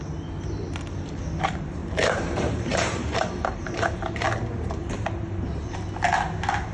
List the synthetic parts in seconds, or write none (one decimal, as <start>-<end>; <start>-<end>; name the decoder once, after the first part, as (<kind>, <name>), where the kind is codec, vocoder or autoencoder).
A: 1.8-5.8 (vocoder, BigVGAN v2)